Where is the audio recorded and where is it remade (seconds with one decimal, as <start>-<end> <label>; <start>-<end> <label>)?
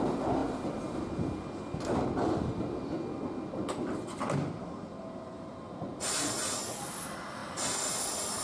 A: 0.0-8.4 recorded